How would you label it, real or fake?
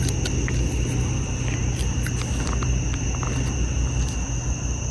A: real